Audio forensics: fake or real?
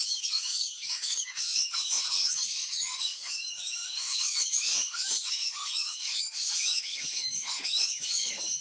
fake